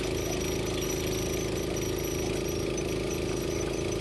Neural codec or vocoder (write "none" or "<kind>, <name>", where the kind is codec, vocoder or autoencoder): none